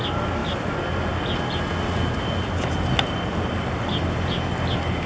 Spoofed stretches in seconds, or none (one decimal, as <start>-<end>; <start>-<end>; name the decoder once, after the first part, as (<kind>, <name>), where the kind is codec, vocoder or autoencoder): none